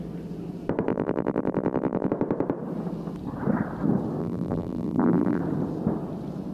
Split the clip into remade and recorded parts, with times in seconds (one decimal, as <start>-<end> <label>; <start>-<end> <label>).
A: 0.0-0.9 recorded; 0.9-2.1 remade; 2.1-4.2 recorded; 4.2-5.4 remade; 5.4-6.5 recorded